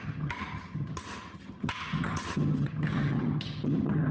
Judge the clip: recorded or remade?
remade